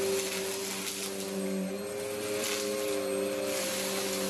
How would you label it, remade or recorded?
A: recorded